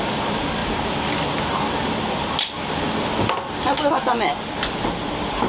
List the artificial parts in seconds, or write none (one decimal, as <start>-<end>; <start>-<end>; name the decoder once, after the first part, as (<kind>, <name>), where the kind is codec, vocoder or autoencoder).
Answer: 0.0-0.6 (vocoder, BigVGAN v2); 3.9-5.5